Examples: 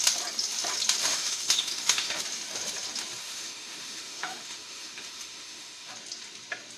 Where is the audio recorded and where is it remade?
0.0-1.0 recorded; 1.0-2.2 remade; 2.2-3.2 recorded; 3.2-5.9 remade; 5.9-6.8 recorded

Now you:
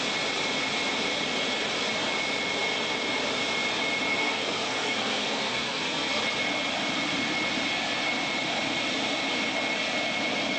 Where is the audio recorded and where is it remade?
0.0-4.1 recorded; 4.1-6.2 remade; 6.2-10.6 recorded